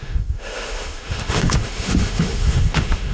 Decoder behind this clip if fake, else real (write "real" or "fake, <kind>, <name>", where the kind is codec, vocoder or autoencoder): fake, autoencoder, DAC-VAE